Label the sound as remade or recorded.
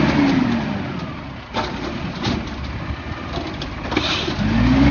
recorded